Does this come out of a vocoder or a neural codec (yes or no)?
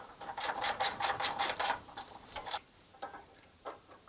yes